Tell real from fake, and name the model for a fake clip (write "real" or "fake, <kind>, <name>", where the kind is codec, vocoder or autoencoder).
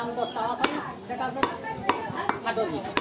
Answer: real